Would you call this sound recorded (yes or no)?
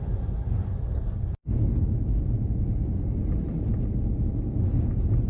yes